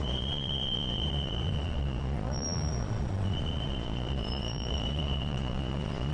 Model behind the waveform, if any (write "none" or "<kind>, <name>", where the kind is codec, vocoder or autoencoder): vocoder, Vocos